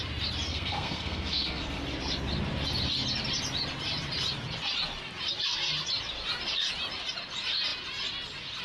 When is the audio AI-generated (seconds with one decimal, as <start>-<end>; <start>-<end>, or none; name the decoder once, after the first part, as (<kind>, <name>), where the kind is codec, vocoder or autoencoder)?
0.5-1.8 (codec, SNAC)